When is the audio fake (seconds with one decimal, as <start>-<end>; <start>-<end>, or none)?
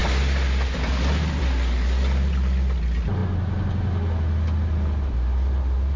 none